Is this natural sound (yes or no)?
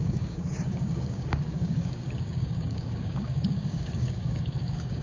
no